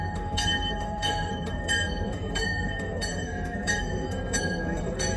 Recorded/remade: remade